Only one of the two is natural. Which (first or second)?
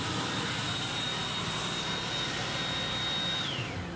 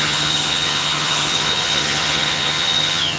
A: first